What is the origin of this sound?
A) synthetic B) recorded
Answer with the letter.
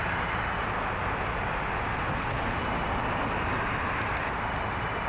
B